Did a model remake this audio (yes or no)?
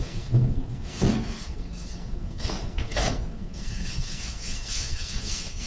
yes